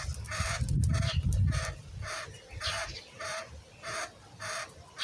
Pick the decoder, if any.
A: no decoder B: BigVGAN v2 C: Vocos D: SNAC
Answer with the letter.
A